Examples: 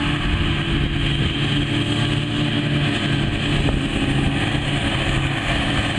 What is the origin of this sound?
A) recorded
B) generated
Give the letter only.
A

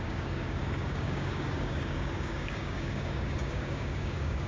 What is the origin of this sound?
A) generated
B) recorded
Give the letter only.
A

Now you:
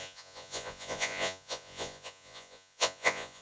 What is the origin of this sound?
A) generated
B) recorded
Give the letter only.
A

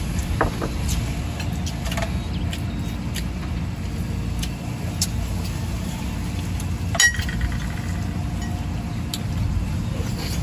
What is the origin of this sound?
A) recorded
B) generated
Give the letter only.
A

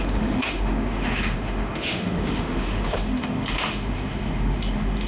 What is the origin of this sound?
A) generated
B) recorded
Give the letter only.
A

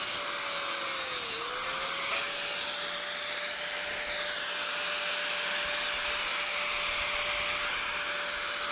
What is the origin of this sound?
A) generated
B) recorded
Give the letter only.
B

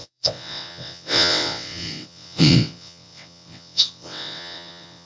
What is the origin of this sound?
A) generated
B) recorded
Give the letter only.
A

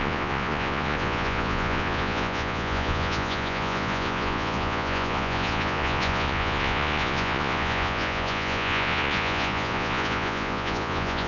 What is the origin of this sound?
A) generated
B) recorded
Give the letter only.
A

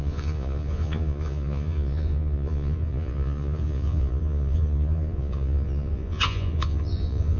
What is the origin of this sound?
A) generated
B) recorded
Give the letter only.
A